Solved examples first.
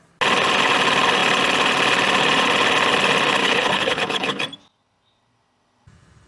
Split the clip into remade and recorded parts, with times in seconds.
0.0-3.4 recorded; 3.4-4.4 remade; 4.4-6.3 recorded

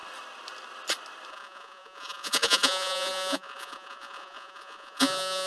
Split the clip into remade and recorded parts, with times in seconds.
0.0-1.3 recorded; 1.3-5.5 remade

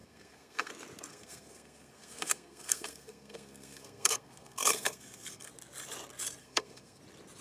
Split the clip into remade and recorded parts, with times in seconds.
0.0-0.7 remade; 0.7-1.1 recorded; 1.1-5.5 remade; 5.5-6.4 recorded; 6.4-7.0 remade; 7.0-7.4 recorded

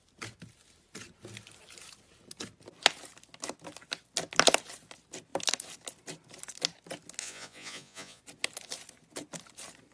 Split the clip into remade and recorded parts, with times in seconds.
0.0-7.2 recorded; 7.2-8.2 remade; 8.2-9.9 recorded

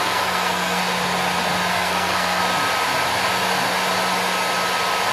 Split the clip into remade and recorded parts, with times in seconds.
0.0-0.8 remade; 0.8-1.7 recorded; 1.7-2.4 remade; 2.4-5.1 recorded

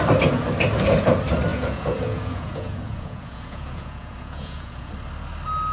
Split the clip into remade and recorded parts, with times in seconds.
0.0-1.5 recorded; 1.5-4.9 remade; 4.9-5.7 recorded

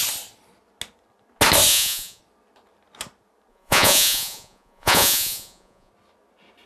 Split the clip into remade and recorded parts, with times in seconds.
0.0-1.7 recorded; 1.7-2.2 remade; 2.2-3.5 recorded; 3.5-5.9 remade; 5.9-6.7 recorded